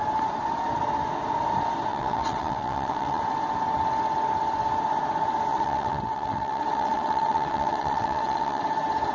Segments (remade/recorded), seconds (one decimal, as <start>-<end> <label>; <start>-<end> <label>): 0.0-1.9 recorded; 1.9-3.2 remade; 3.2-5.5 recorded; 5.5-8.6 remade; 8.6-9.1 recorded